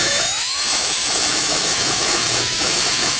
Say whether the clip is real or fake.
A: fake